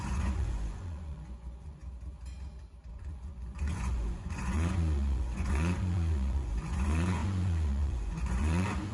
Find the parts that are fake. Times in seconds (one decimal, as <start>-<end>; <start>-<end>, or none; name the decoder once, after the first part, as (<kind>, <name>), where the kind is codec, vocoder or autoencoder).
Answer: 0.0-1.8 (vocoder, Vocos); 2.9-8.9